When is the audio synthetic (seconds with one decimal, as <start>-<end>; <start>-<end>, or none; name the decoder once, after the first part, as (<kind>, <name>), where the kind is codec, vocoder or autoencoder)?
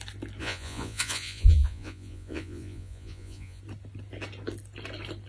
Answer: 0.4-3.6 (vocoder, Vocos)